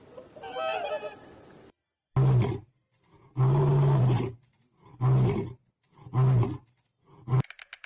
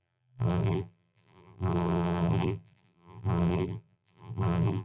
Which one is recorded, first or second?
first